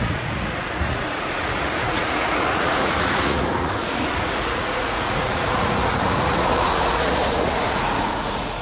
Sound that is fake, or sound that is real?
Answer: fake